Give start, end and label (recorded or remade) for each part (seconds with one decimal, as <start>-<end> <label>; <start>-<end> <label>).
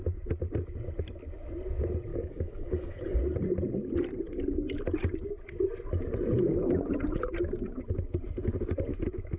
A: 0.0-2.1 recorded; 2.1-3.2 remade; 3.2-9.4 recorded